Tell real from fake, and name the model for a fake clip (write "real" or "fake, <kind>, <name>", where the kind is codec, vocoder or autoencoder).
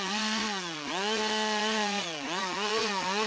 fake, vocoder, Vocos